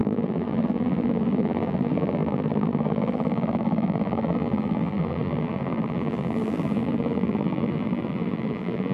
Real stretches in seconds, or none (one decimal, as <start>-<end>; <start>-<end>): none